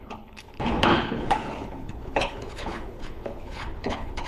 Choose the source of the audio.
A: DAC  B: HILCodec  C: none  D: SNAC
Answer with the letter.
B